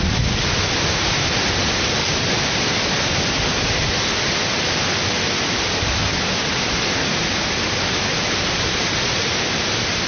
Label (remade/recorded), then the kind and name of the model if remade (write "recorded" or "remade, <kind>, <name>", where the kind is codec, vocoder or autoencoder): recorded